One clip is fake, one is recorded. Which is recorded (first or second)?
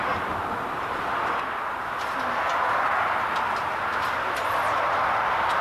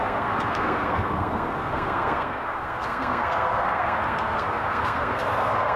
first